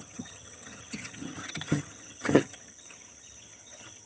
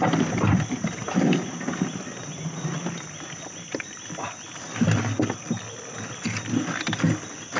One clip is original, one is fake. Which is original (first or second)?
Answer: second